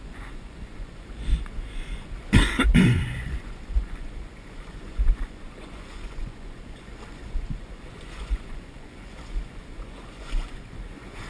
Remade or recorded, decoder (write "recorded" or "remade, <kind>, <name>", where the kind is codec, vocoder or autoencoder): remade, vocoder, Vocos